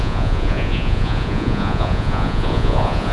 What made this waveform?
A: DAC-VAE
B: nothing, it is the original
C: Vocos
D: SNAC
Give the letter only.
C